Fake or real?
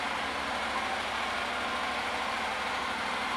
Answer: real